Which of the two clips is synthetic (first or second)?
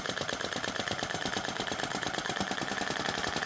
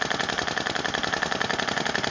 first